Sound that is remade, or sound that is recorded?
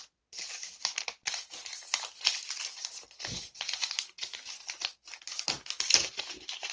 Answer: recorded